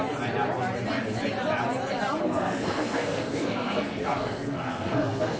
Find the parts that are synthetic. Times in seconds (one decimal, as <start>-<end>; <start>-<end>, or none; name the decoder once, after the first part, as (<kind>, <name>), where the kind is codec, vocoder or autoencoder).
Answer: 2.2-5.4 (codec, SNAC)